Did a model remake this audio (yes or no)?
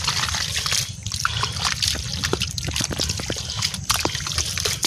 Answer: yes